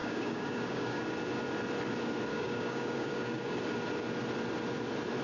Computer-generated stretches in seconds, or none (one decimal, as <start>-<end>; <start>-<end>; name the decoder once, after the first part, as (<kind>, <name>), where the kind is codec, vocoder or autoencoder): 0.0-1.0 (codec, DAC); 2.3-3.6